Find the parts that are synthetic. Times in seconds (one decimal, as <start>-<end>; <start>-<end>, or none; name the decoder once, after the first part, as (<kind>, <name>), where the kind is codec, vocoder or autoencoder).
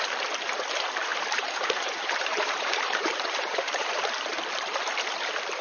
1.1-4.1 (vocoder, BigVGAN v2)